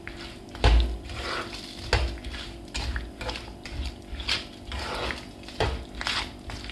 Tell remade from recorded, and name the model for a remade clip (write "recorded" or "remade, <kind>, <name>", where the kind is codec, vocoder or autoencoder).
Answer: recorded